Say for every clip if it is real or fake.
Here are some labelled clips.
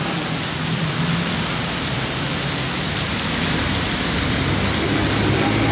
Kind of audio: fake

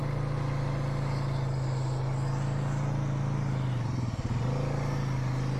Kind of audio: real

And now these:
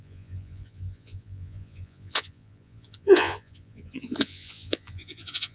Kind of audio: fake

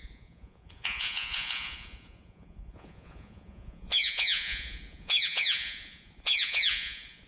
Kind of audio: fake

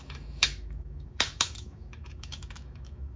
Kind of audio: fake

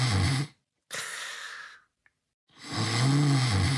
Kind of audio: real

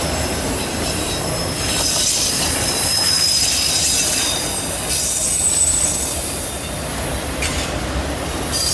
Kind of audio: fake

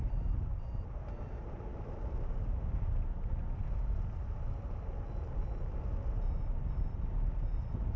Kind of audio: real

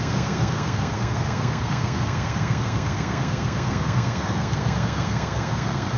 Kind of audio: fake